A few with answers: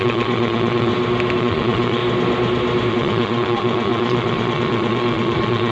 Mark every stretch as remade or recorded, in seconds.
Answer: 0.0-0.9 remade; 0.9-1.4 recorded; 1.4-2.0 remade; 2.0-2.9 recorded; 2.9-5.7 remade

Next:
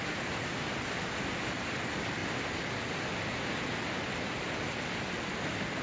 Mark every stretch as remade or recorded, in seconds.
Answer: 0.0-5.8 recorded

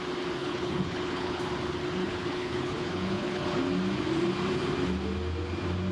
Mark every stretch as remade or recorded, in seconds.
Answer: 0.0-0.4 recorded; 0.4-1.4 remade; 1.4-2.0 recorded; 2.0-3.6 remade; 3.6-5.9 recorded

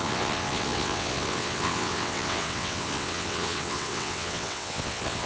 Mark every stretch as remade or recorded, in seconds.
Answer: 0.0-5.3 remade

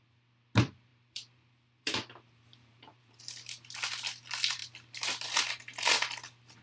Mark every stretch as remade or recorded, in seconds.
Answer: 0.0-0.9 recorded; 0.9-3.2 remade; 3.2-6.6 recorded

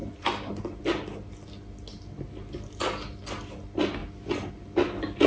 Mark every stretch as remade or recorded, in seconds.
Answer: 0.0-5.3 recorded

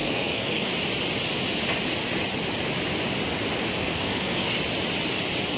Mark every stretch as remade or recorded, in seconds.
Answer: 0.0-0.7 remade; 0.7-3.8 recorded; 3.8-4.5 remade; 4.5-5.6 recorded